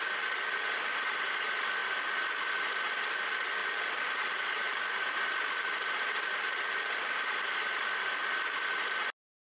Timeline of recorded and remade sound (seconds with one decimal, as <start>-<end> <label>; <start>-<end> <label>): 0.0-3.6 recorded; 3.6-7.6 remade; 7.6-9.6 recorded